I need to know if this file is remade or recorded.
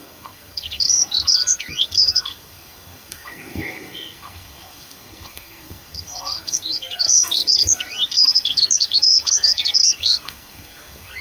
remade